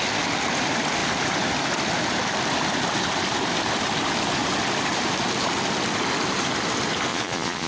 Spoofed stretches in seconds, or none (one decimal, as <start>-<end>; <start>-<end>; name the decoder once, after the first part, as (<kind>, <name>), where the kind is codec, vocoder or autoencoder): 7.1-7.7 (vocoder, Vocos)